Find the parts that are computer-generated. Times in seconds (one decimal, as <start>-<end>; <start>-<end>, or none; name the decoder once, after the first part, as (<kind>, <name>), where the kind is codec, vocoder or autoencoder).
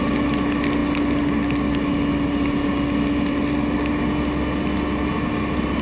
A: none